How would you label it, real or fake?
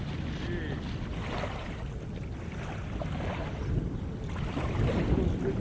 real